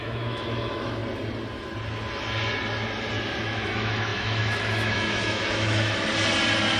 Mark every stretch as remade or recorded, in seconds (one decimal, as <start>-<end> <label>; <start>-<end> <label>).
0.0-1.0 remade; 1.0-3.4 recorded; 3.4-6.1 remade; 6.1-6.8 recorded